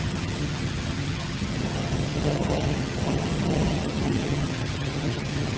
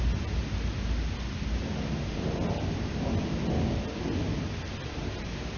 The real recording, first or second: second